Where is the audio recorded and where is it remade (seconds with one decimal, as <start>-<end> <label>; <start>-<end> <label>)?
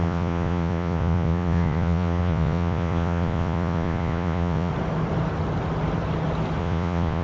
0.0-4.7 remade; 4.7-6.6 recorded; 6.6-7.2 remade